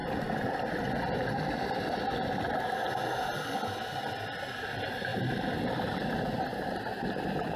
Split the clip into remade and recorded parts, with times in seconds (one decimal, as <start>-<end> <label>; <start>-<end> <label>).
0.0-7.6 recorded